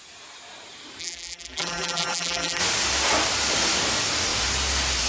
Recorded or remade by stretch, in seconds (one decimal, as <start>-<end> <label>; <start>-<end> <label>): 0.0-1.0 recorded; 1.0-2.6 remade; 2.6-5.1 recorded